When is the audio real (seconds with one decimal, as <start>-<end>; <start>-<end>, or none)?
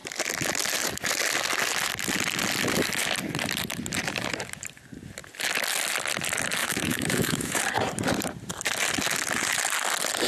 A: 0.0-6.6; 7.6-10.3